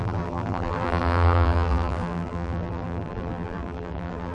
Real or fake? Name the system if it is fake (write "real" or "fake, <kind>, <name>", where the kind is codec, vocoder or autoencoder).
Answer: fake, vocoder, BigVGAN v2